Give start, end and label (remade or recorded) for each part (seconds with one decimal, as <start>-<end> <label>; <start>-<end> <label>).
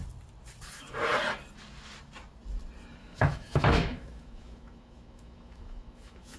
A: 0.0-3.0 recorded; 3.0-6.4 remade